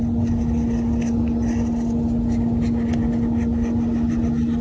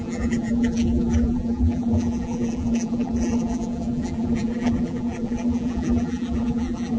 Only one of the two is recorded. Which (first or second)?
first